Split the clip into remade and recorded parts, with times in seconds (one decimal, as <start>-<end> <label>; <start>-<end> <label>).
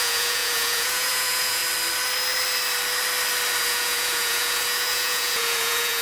0.0-1.6 remade; 1.6-3.6 recorded; 3.6-6.0 remade